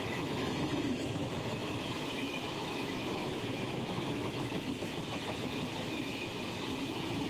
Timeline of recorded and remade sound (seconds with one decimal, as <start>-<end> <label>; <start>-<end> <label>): 0.0-7.3 remade